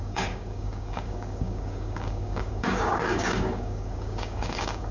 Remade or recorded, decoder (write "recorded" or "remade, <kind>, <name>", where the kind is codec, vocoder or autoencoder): remade, codec, DAC